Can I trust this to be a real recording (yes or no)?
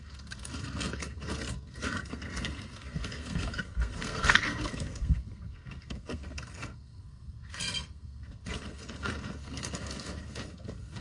no